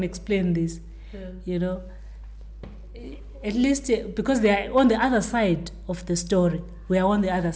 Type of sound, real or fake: real